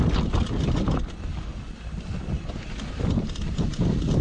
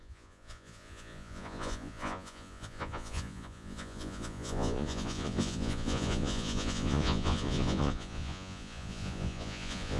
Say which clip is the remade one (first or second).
second